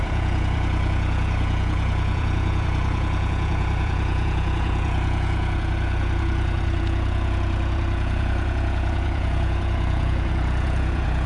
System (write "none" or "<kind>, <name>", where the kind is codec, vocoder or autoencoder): vocoder, Vocos